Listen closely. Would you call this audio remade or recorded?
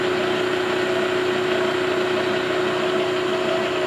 recorded